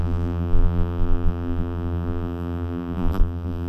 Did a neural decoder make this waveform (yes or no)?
yes